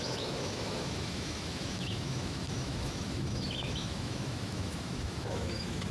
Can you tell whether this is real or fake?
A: fake